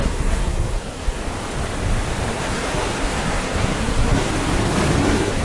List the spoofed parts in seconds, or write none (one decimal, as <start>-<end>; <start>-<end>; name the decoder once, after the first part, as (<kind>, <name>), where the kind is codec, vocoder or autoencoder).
0.0-1.2 (codec, SNAC); 2.3-4.3; 5.0-5.4